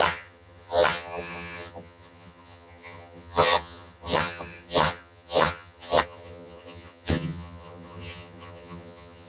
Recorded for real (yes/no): no